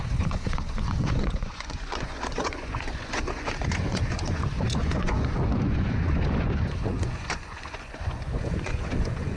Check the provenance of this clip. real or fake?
fake